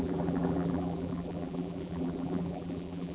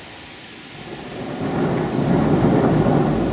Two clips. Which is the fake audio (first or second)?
first